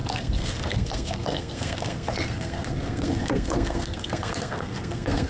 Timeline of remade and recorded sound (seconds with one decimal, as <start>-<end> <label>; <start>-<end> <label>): 0.0-5.3 remade